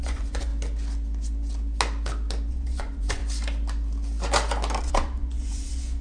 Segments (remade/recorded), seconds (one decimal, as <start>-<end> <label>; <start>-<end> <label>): 0.0-0.5 remade; 0.5-2.5 recorded; 2.5-3.2 remade; 3.2-4.8 recorded; 4.8-6.0 remade